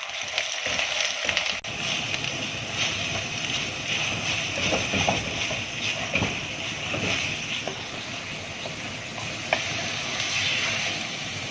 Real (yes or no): yes